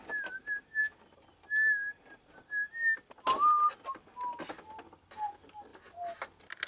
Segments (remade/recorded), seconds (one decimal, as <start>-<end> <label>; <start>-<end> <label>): 0.0-6.7 recorded